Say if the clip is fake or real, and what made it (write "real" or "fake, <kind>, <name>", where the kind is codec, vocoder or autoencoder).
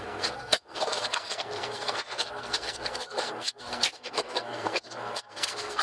fake, codec, SNAC